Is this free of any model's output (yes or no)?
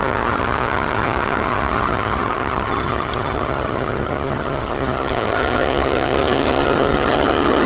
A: no